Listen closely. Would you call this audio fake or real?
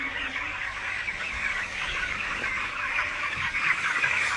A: fake